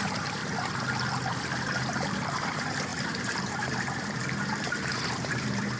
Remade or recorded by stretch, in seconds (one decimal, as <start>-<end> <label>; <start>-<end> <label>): 0.0-0.4 remade; 0.4-1.9 recorded; 1.9-5.8 remade